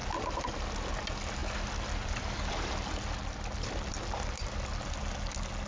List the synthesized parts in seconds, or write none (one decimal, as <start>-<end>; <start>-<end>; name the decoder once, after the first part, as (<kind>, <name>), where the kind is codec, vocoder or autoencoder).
none